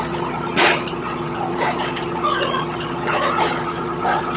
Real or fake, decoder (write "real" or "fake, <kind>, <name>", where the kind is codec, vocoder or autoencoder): fake, vocoder, Vocos